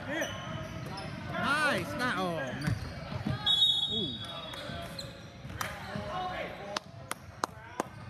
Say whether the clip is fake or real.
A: real